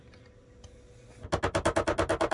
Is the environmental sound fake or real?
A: real